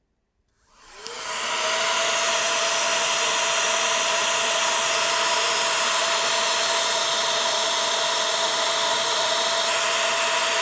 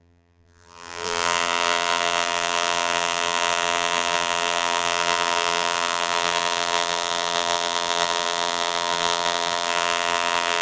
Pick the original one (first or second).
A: first